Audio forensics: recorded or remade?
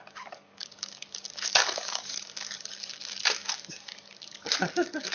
remade